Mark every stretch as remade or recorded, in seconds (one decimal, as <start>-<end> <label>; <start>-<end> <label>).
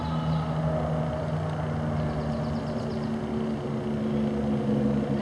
0.0-5.2 recorded